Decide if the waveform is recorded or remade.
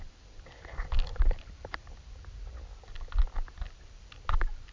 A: recorded